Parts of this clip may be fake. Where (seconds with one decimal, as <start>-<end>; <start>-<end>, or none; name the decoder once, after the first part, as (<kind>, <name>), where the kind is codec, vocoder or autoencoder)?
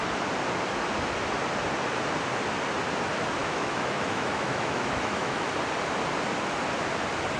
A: 3.4-5.5 (autoencoder, DAC-VAE)